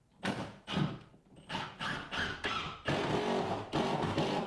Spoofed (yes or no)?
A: no